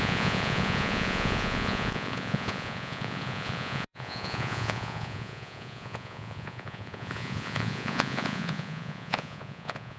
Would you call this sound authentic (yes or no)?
no